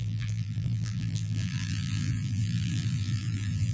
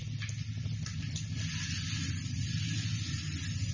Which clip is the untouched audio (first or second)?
second